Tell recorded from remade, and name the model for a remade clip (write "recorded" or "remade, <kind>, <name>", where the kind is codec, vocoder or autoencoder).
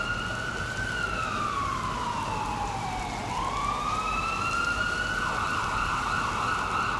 recorded